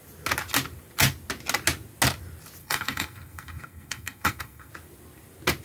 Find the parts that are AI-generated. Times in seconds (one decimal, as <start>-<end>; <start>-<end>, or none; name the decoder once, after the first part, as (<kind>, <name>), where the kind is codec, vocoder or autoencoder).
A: 2.6-4.7 (codec, SNAC)